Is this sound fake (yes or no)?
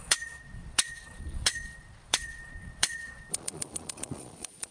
yes